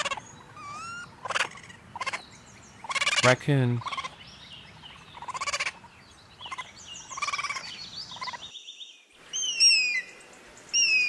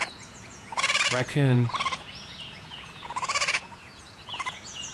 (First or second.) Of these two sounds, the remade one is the second